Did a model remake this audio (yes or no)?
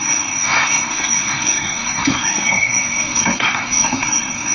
yes